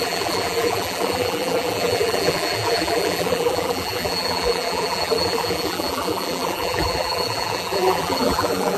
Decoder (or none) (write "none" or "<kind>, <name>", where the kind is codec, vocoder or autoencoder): vocoder, BigVGAN v2